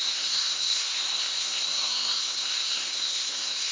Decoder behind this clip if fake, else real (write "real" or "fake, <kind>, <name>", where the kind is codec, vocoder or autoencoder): fake, codec, SNAC